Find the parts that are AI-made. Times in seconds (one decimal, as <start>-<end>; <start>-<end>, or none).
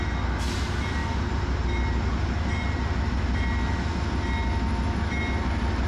none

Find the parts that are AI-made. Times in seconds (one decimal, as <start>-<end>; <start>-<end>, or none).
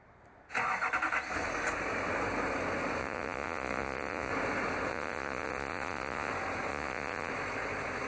3.0-4.3; 4.9-6.3; 6.7-7.3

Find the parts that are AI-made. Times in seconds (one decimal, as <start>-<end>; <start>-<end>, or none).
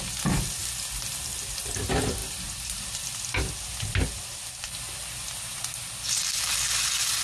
none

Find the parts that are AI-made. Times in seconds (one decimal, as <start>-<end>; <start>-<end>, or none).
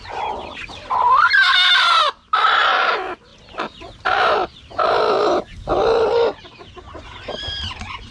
3.3-5.0; 5.7-7.5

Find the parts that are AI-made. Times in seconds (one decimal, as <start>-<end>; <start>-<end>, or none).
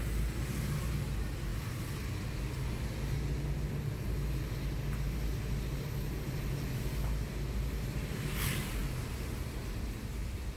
none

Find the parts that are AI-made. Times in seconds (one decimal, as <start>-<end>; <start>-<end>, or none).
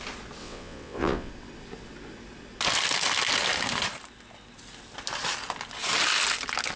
0.4-1.3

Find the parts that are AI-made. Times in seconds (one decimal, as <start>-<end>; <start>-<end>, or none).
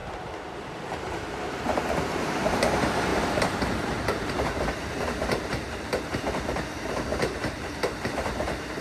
0.0-8.8